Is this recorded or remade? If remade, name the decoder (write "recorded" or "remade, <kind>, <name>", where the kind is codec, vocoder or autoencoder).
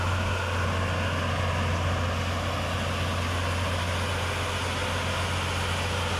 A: recorded